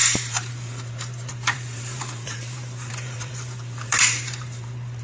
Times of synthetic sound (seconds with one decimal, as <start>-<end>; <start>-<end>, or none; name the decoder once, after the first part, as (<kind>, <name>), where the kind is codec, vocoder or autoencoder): 0.0-5.0 (vocoder, BigVGAN v2)